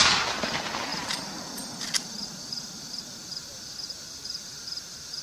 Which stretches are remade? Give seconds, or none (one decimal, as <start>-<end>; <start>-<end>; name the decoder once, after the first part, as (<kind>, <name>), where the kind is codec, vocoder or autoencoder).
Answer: 0.9-3.0 (vocoder, BigVGAN v2)